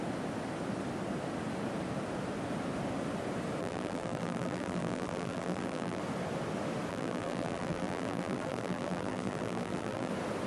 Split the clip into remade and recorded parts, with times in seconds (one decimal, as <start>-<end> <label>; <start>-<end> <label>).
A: 0.0-3.6 recorded; 3.6-6.0 remade; 6.0-6.9 recorded; 6.9-10.1 remade; 10.1-10.5 recorded